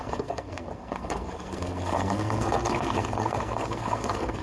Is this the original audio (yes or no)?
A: no